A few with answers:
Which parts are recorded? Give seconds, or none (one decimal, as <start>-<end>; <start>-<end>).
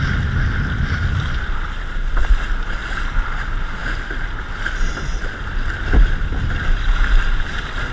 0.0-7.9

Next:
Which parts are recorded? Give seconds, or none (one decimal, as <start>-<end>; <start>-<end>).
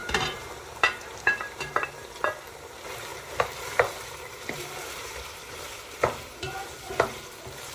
1.9-3.1; 6.9-7.7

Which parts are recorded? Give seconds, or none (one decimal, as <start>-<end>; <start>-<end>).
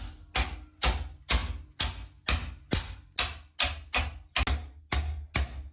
0.0-5.7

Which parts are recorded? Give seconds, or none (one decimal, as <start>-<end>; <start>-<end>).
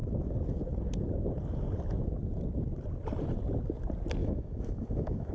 0.0-4.2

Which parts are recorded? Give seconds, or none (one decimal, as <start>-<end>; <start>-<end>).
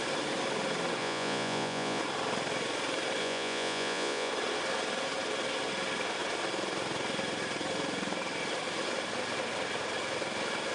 0.0-1.0; 2.0-3.2; 4.3-10.7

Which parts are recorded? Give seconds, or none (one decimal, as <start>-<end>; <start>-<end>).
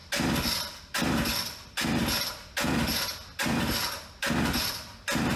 0.0-5.4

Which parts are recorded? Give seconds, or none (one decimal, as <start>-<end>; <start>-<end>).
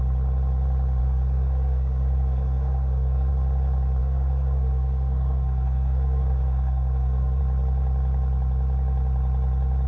0.0-1.0; 3.3-4.0; 7.4-9.9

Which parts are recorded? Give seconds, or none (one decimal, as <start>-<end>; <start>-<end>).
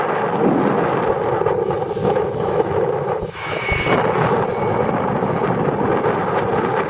0.0-2.0; 3.8-6.9